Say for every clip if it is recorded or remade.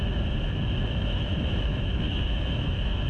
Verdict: remade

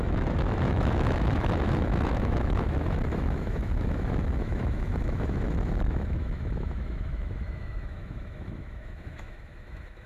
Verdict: remade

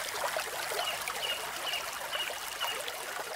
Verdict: recorded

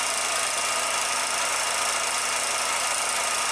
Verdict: recorded